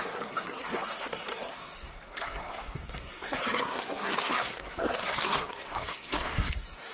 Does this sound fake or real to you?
fake